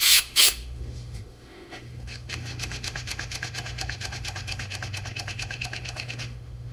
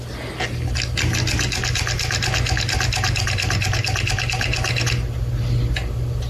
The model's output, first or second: first